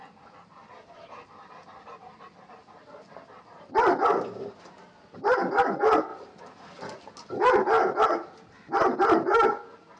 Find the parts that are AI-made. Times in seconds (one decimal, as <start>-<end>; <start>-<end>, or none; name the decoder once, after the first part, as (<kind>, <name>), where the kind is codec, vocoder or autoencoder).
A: none